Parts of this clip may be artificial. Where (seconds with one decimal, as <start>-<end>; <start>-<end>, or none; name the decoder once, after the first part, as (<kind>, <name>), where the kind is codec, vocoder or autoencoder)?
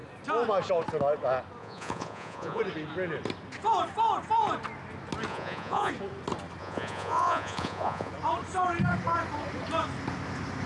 1.6-2.6 (vocoder, Vocos); 5.3-5.9; 6.6-8.1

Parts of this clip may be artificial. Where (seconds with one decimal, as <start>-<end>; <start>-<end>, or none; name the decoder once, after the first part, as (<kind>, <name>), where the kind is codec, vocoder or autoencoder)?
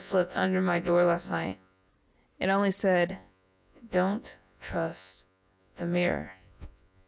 0.0-1.9 (vocoder, Vocos); 3.1-7.1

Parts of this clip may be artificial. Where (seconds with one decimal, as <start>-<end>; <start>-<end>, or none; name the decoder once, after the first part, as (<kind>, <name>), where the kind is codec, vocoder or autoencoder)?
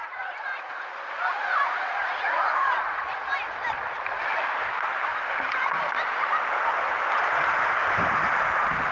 0.0-0.8 (vocoder, Vocos); 1.3-3.0